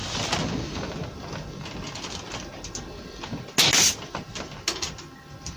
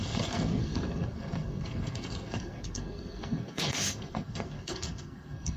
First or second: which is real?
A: first